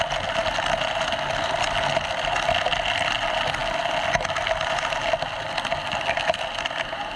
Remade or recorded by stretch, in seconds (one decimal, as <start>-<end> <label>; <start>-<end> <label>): 0.0-7.2 recorded